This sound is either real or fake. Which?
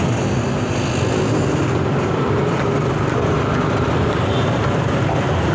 real